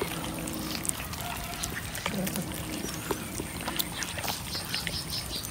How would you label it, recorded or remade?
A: recorded